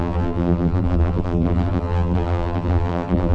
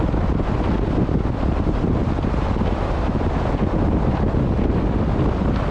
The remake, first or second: first